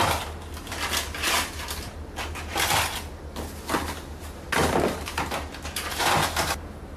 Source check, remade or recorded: recorded